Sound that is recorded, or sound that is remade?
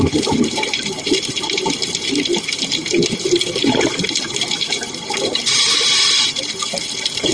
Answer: recorded